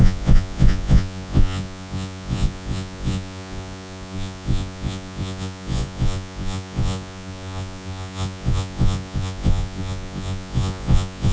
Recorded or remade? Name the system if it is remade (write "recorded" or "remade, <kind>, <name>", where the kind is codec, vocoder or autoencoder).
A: remade, vocoder, Vocos